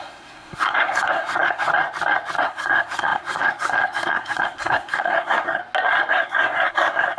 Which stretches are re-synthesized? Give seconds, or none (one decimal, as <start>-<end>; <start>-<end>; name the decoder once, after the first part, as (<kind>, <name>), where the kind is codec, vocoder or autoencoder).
0.0-1.7 (codec, SNAC); 2.4-5.6; 6.1-7.2